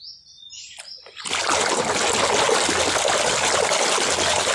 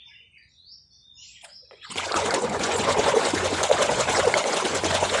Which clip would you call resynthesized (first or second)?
second